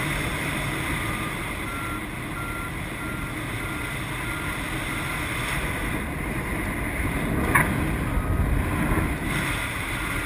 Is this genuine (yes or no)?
yes